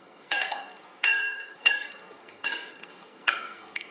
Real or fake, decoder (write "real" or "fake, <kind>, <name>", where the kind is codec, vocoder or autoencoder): fake, codec, SNAC